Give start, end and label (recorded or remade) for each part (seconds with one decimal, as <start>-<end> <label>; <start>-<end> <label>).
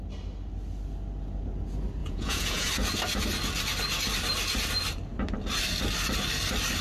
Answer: 0.0-2.0 recorded; 2.0-2.7 remade; 2.7-6.8 recorded